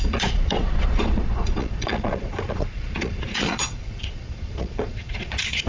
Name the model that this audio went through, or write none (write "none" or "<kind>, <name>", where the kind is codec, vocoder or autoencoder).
vocoder, Vocos